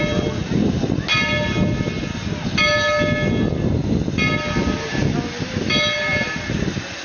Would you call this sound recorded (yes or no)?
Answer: yes